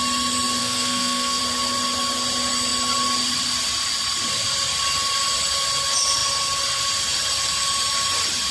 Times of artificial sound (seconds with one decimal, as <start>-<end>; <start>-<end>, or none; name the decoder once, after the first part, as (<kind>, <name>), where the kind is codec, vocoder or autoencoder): 0.6-1.4 (codec, SNAC)